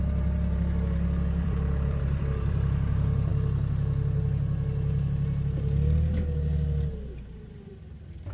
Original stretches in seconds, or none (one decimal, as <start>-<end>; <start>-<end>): 3.3-7.4